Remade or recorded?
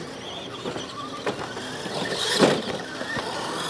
recorded